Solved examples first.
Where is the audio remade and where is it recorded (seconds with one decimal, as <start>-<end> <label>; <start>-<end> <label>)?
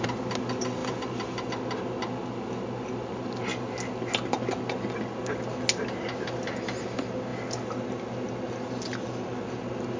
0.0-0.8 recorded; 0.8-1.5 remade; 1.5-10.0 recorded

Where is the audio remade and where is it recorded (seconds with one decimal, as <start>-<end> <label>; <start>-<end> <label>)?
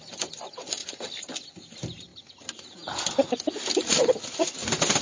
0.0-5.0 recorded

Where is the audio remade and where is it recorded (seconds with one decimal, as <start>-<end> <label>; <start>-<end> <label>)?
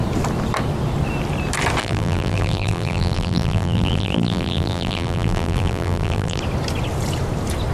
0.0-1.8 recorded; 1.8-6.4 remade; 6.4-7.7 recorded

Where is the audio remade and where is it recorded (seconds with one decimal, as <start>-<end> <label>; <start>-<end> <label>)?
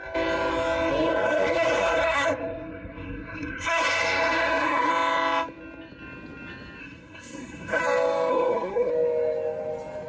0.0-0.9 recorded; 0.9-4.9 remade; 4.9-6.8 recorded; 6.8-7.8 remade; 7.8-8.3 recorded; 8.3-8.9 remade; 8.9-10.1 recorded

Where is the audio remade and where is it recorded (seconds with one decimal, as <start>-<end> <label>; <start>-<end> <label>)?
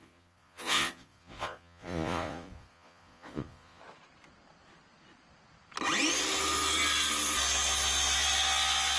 0.0-3.8 remade; 3.8-9.0 recorded